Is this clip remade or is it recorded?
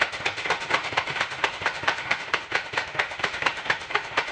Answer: remade